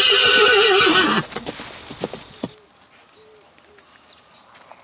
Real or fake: real